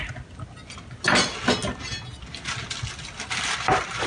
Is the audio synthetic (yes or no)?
no